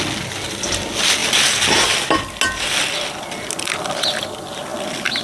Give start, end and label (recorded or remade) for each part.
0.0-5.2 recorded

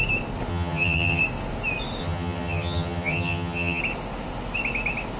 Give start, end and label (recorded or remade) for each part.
0.0-0.5 recorded; 0.5-1.2 remade; 1.2-2.0 recorded; 2.0-3.8 remade; 3.8-5.2 recorded

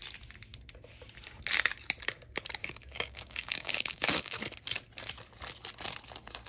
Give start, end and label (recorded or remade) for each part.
0.0-2.6 recorded; 2.6-4.4 remade; 4.4-6.5 recorded

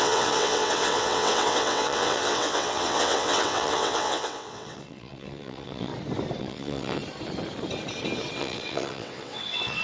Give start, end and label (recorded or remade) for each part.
0.0-5.9 remade; 5.9-6.4 recorded; 6.4-7.0 remade; 7.0-8.4 recorded; 8.4-9.8 remade